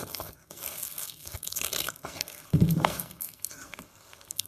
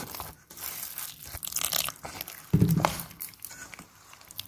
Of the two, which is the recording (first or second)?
second